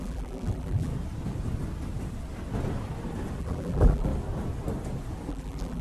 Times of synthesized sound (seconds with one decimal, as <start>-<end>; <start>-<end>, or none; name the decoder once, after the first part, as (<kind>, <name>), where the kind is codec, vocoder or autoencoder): 0.0-0.9 (vocoder, BigVGAN v2); 3.4-4.1; 5.3-5.8